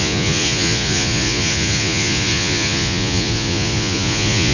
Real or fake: fake